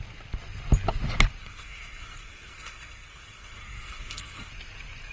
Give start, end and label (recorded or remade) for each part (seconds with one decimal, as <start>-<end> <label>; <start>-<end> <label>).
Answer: 0.0-1.4 recorded; 1.4-4.5 remade; 4.5-5.1 recorded